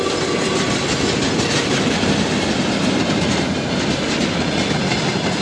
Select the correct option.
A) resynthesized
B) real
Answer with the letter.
B